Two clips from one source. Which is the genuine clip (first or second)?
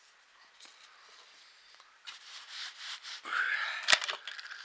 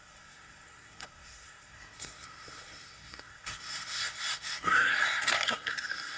first